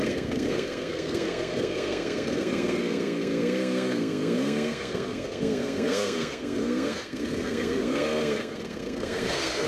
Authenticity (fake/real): fake